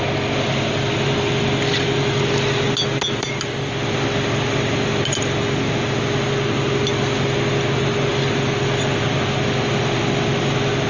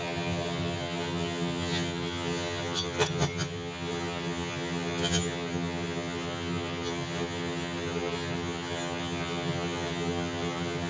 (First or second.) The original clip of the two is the first